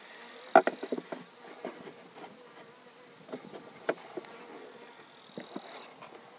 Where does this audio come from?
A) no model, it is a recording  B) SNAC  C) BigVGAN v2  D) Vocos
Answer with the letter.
A